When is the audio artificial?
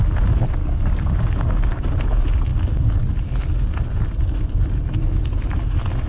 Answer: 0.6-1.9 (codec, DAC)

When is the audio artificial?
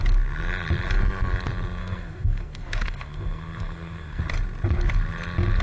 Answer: 1.8-4.2 (codec, SNAC)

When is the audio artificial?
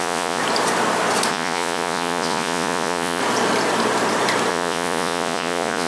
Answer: 0.0-0.4 (vocoder, Vocos); 1.3-3.2; 4.5-5.9